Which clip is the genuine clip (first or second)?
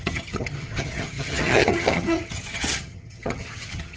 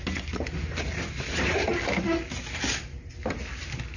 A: second